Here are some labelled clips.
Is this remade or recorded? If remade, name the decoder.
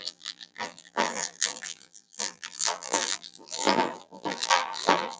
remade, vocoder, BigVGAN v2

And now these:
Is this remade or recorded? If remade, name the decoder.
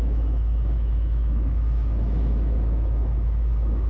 remade, autoencoder, DAC-VAE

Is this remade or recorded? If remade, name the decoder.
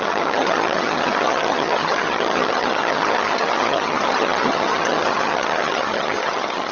remade, vocoder, HiFi-GAN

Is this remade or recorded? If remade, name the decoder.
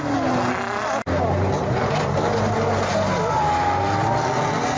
recorded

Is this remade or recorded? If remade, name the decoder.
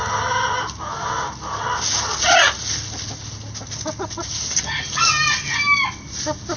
recorded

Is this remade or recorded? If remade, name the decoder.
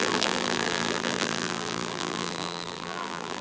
remade, vocoder, BigVGAN v2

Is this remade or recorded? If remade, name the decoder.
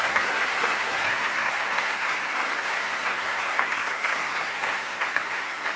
remade, codec, SNAC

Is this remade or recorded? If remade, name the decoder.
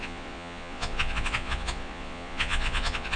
remade, vocoder, Vocos